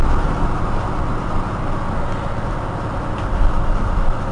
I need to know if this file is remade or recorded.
recorded